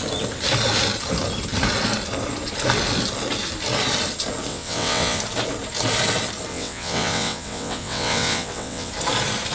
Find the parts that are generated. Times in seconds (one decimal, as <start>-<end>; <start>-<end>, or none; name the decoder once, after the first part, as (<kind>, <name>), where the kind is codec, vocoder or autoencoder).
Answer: 4.5-5.2 (vocoder, WaveNeXt); 6.5-8.9